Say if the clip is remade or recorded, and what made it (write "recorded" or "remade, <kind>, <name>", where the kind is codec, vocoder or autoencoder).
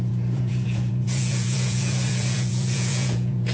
remade, vocoder, Vocos